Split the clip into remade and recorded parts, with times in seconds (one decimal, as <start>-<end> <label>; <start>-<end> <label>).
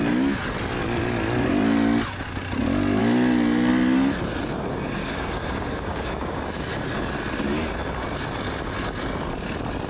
0.0-5.0 recorded; 5.0-6.4 remade; 6.4-9.9 recorded